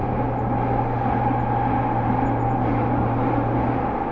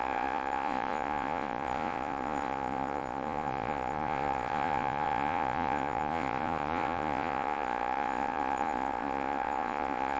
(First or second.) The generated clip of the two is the second